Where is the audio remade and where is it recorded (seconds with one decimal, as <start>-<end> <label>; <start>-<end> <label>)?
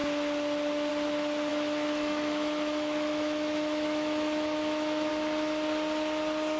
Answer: 0.0-1.5 recorded; 1.5-5.1 remade; 5.1-6.6 recorded